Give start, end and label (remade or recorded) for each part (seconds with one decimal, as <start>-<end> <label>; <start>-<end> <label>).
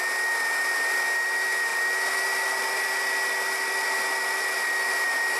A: 0.0-5.4 recorded